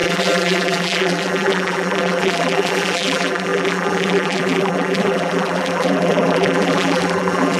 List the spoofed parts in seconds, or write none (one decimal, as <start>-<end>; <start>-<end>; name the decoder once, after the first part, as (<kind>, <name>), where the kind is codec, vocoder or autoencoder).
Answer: 0.0-7.6 (vocoder, BigVGAN v2)